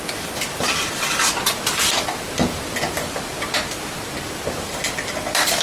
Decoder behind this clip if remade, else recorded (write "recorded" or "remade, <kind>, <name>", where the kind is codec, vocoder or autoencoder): recorded